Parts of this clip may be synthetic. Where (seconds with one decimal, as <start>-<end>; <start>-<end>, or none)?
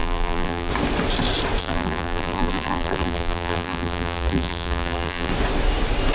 0.0-0.7; 1.6-5.3